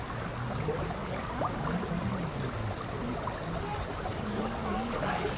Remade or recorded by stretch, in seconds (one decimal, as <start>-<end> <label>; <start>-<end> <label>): 0.0-1.0 recorded; 1.0-1.9 remade; 1.9-4.1 recorded; 4.1-5.4 remade